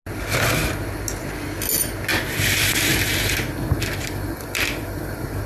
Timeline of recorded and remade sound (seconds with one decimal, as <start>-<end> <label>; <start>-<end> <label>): 0.0-2.1 recorded; 2.1-5.5 remade